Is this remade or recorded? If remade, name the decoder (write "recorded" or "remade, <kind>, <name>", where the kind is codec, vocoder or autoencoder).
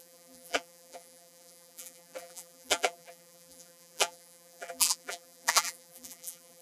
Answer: remade, vocoder, BigVGAN v2